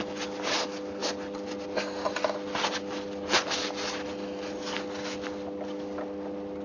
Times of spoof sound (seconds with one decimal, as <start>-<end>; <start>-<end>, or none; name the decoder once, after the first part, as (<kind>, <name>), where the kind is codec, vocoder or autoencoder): none